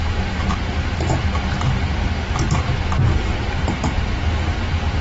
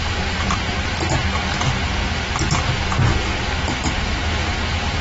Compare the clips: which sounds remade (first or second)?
first